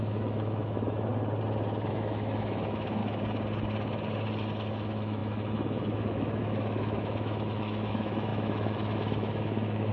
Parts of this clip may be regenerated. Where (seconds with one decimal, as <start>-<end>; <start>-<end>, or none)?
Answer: 0.0-1.1; 1.9-3.0; 4.7-9.9